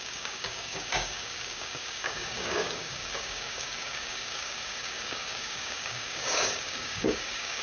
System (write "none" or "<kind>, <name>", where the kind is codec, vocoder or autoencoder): codec, DAC